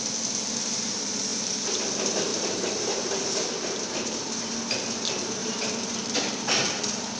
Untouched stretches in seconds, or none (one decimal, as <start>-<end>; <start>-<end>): 0.0-1.3; 1.8-2.3; 4.5-5.4